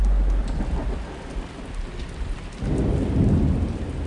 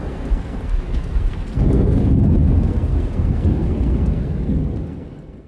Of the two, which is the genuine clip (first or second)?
first